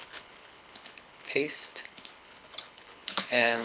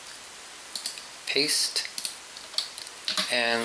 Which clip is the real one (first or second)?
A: second